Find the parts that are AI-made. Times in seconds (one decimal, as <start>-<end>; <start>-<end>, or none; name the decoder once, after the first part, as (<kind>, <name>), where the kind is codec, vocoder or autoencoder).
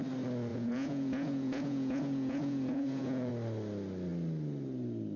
0.5-3.3 (vocoder, Vocos)